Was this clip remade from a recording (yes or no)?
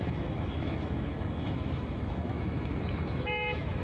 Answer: yes